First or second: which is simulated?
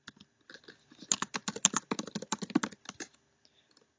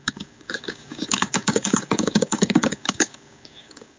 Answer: second